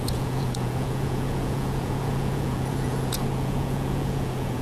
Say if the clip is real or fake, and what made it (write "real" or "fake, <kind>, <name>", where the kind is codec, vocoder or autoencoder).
fake, vocoder, Vocos